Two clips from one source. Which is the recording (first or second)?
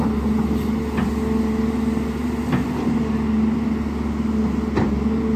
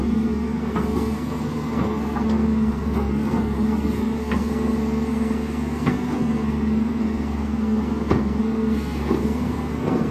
first